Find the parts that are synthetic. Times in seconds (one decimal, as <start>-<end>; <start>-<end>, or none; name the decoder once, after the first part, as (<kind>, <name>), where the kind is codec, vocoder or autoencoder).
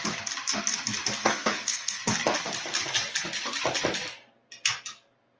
1.2-2.0 (codec, SNAC)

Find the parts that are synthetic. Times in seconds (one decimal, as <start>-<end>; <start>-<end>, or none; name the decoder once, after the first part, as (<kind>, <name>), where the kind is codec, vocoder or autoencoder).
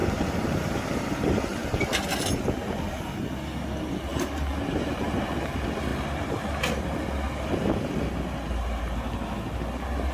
0.0-1.8 (vocoder, BigVGAN v2); 4.1-5.2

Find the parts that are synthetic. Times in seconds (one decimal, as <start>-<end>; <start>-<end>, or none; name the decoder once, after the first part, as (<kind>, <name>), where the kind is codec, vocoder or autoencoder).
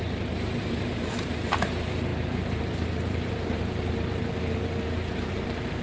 0.0-1.7 (vocoder, BigVGAN v2); 2.1-5.8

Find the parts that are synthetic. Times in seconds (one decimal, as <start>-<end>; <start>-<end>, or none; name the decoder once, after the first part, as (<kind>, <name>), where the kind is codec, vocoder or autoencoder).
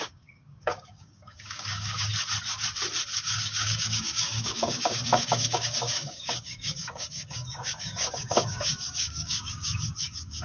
0.0-2.1 (codec, DAC); 3.3-10.4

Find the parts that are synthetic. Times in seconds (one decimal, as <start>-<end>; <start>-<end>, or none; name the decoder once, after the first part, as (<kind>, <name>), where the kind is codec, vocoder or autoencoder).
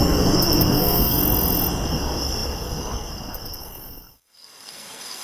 0.0-1.2 (codec, SNAC); 1.9-5.2